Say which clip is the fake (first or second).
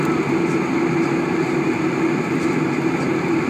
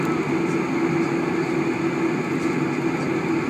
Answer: first